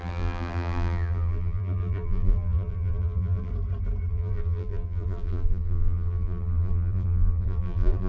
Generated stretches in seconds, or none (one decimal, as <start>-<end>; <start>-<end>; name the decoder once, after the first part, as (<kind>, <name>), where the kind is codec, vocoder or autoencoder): 0.0-3.5 (vocoder, BigVGAN v2); 4.1-8.1